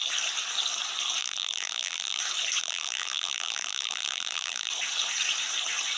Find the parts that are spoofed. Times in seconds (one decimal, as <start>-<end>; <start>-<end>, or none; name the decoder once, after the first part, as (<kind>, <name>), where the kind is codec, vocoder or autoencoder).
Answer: 1.2-2.2 (vocoder, BigVGAN v2); 2.6-4.7